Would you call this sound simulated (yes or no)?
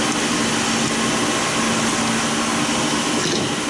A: no